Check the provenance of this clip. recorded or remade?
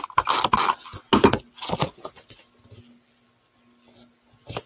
recorded